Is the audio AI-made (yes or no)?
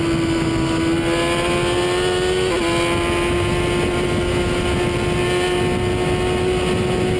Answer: no